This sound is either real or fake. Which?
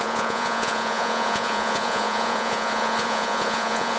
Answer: fake